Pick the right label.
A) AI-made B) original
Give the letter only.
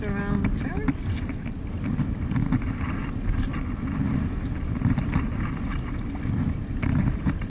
B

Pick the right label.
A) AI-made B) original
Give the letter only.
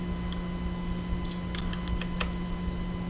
B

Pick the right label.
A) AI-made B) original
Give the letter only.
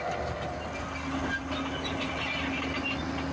B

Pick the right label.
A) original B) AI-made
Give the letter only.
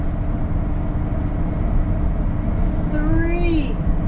A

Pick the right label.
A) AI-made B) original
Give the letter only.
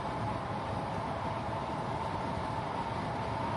B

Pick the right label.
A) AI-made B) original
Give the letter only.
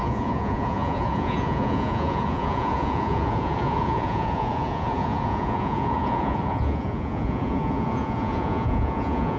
A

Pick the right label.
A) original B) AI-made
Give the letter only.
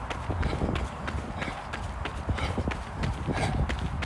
A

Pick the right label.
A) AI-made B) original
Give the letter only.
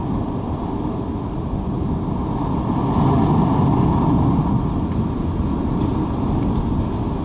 B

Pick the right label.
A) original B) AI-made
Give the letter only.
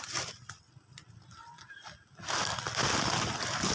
A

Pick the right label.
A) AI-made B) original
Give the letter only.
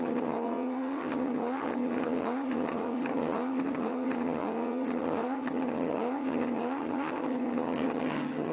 A